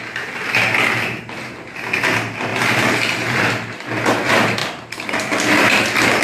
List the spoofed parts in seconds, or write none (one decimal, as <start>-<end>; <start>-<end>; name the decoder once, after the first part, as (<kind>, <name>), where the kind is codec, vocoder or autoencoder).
none